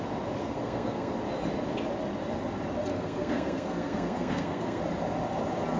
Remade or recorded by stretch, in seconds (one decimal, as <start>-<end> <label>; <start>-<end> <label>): 0.0-0.4 recorded; 0.4-1.1 remade; 1.1-2.9 recorded; 2.9-4.8 remade; 4.8-5.8 recorded